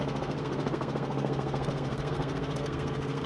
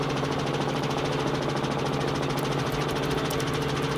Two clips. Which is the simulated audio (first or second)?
first